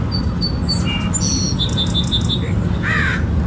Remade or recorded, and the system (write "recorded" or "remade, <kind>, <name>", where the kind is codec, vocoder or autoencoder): recorded